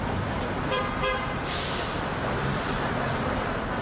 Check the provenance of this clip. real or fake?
fake